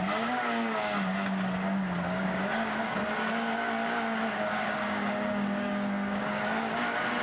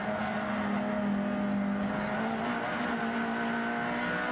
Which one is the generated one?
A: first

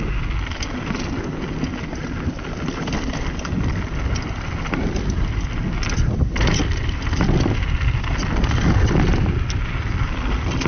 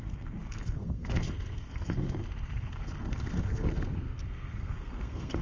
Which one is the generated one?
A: second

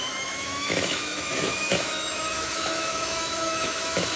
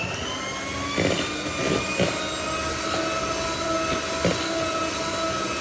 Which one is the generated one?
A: first